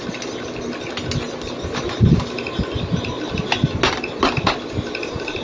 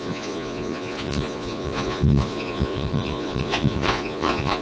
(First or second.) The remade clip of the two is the second